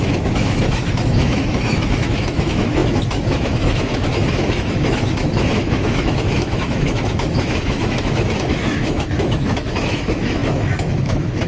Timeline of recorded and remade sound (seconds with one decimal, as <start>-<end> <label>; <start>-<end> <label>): 0.0-11.5 remade